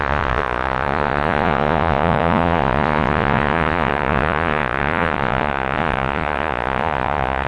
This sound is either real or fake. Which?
fake